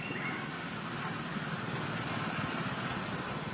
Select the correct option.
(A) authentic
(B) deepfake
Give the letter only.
A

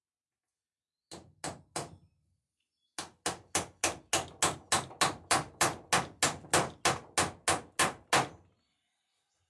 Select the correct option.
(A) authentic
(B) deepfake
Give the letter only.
A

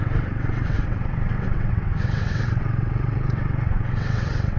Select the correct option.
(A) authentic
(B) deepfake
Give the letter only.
B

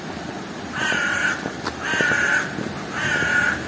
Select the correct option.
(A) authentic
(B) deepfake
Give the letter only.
A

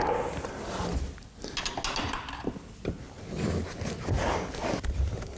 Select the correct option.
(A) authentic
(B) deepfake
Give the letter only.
A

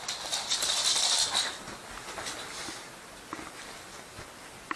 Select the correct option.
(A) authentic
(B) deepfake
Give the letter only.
A